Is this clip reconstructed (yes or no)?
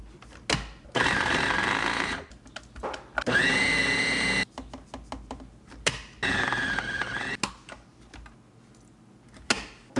no